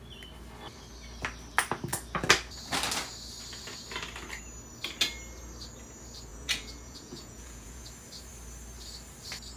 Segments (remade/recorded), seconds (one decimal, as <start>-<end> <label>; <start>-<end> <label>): 0.0-6.3 recorded; 6.3-7.9 remade; 7.9-9.6 recorded